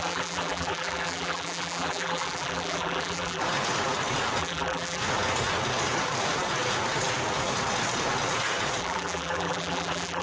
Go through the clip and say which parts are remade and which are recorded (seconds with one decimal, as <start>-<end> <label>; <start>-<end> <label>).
0.0-3.4 remade; 3.4-4.4 recorded; 4.4-5.0 remade; 5.0-8.8 recorded; 8.8-10.2 remade